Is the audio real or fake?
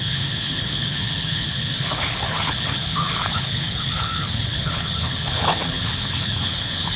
fake